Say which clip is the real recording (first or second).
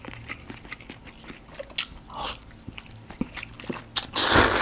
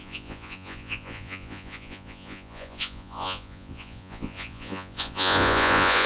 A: first